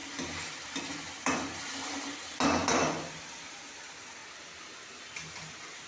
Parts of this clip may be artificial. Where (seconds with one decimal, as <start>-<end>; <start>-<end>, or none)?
none